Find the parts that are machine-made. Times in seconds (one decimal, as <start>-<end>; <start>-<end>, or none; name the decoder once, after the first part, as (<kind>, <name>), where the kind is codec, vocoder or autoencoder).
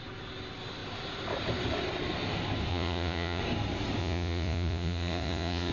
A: 2.7-3.4 (vocoder, Vocos); 4.0-5.7